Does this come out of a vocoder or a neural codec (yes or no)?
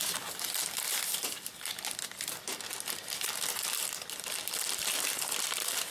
no